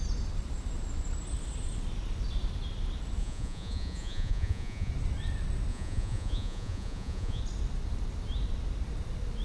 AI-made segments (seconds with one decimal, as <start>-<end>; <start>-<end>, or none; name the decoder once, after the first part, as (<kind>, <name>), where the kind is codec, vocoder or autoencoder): 3.2-4.9 (vocoder, Vocos); 5.7-7.4